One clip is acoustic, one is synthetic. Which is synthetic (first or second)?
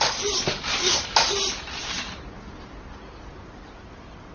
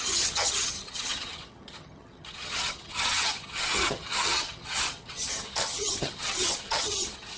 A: second